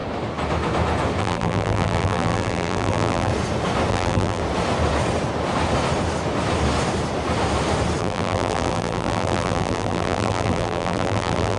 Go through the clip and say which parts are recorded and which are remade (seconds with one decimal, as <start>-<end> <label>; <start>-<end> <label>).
0.0-1.2 recorded; 1.2-3.3 remade; 3.3-3.9 recorded; 3.9-4.4 remade; 4.4-8.0 recorded; 8.0-11.6 remade